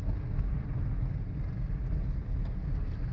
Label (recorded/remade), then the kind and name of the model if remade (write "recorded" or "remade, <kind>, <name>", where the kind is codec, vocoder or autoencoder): recorded